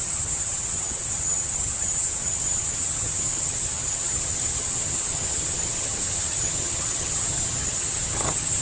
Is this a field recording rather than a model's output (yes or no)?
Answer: no